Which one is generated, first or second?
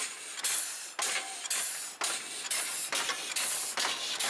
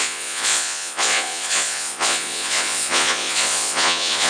second